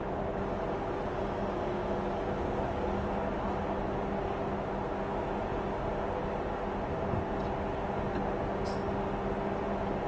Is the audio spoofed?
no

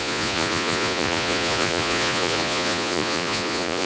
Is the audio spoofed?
yes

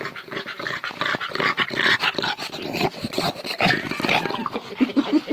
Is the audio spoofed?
no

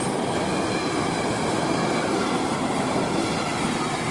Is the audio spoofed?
no